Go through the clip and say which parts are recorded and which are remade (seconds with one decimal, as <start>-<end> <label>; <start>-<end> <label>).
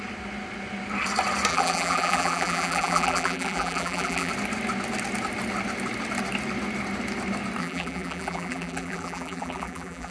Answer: 0.0-1.5 recorded; 1.5-4.3 remade; 4.3-7.6 recorded; 7.6-10.1 remade